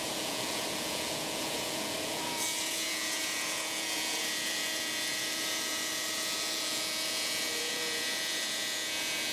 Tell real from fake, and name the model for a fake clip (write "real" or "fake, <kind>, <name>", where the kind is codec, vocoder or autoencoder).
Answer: fake, vocoder, Vocos